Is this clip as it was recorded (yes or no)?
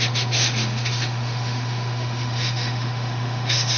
no